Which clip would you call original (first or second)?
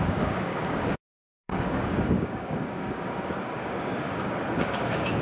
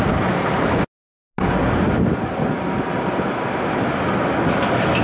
second